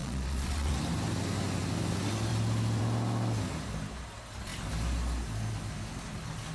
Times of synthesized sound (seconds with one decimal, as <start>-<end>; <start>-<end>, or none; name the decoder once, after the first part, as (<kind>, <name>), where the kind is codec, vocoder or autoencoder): 0.0-0.7 (vocoder, Vocos)

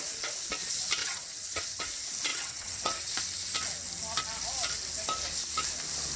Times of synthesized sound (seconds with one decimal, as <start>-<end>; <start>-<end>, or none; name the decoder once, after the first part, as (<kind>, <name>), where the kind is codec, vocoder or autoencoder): 1.0-1.8 (vocoder, WaveNeXt); 2.3-3.2